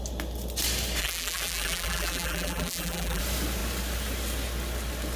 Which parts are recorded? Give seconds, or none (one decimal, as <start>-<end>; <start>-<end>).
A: 0.0-1.0; 3.2-5.2